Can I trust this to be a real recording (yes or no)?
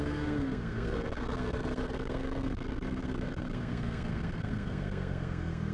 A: no